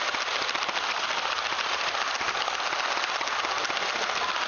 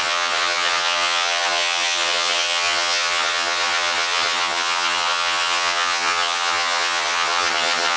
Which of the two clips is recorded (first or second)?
first